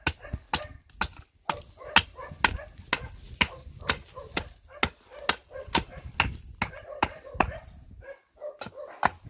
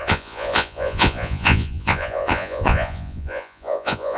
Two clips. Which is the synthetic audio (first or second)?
second